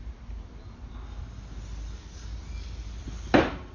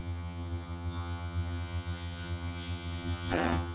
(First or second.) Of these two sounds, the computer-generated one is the second